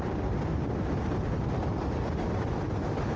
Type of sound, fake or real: real